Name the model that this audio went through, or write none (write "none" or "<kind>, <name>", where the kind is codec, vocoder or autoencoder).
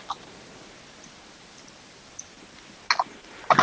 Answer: none